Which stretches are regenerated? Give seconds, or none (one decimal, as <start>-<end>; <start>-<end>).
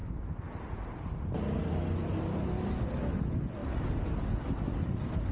none